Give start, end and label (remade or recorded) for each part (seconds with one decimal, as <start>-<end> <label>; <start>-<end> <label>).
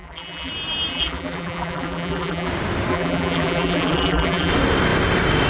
0.0-0.5 remade; 0.5-0.9 recorded; 0.9-2.5 remade; 2.5-2.9 recorded; 2.9-4.5 remade; 4.5-5.5 recorded